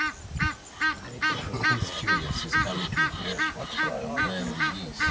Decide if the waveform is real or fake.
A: real